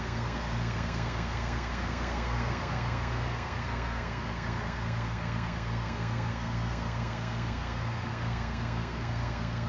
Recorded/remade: remade